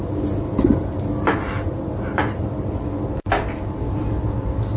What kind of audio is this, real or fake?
real